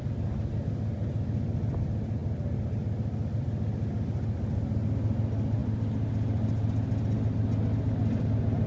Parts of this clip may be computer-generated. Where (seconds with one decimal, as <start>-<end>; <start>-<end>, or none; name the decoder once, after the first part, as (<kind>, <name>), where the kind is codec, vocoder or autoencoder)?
none